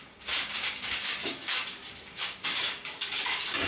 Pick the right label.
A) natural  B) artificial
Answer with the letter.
B